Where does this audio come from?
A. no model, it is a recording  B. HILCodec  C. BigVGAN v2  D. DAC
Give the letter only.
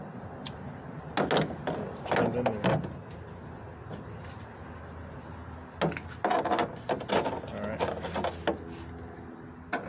A